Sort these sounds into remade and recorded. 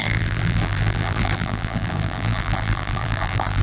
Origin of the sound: remade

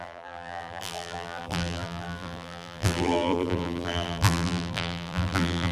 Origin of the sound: remade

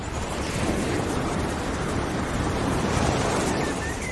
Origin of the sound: remade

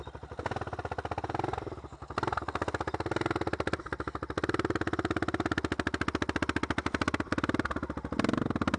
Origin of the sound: recorded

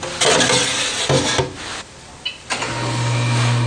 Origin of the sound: recorded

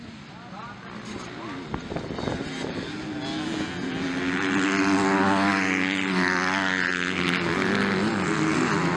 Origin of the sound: recorded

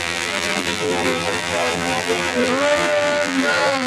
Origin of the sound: remade